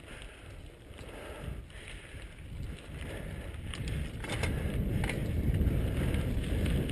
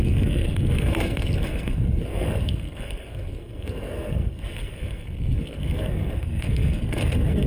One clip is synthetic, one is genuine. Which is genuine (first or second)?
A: first